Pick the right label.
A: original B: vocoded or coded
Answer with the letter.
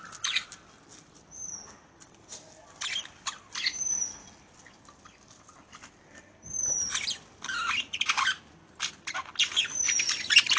B